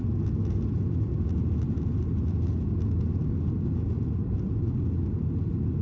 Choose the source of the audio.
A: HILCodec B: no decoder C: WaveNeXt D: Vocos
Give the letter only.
B